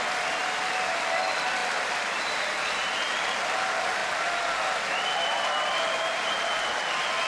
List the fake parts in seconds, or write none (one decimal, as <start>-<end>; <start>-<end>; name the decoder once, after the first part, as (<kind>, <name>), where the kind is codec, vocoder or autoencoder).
none